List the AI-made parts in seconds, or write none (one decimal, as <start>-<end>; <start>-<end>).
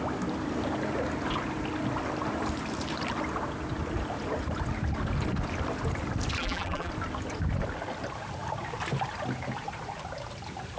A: 6.4-6.9